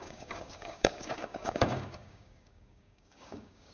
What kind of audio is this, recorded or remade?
remade